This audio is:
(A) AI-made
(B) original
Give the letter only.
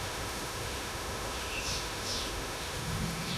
A